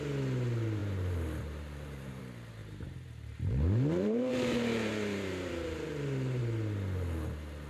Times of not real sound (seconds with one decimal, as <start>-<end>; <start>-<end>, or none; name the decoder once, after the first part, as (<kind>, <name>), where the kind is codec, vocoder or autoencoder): 0.8-2.2 (vocoder, BigVGAN v2); 2.6-6.4